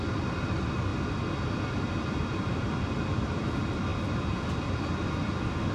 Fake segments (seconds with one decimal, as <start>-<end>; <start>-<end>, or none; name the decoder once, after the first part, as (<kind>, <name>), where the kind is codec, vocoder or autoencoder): 0.0-0.9 (vocoder, BigVGAN v2); 2.4-3.9